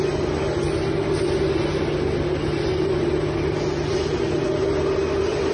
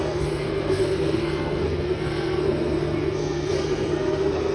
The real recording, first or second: first